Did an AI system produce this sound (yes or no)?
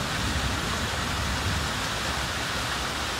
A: no